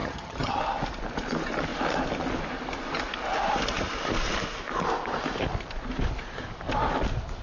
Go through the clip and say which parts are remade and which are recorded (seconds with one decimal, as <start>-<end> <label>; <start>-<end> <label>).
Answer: 0.0-0.6 remade; 0.6-7.4 recorded